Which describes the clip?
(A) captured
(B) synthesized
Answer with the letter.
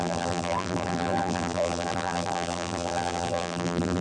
B